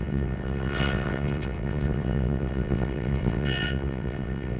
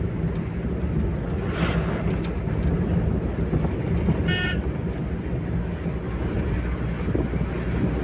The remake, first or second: first